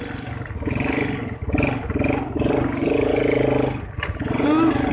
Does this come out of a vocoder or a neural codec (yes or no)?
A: no